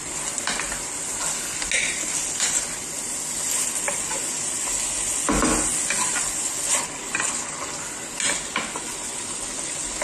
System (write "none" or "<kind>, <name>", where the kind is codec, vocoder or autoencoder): none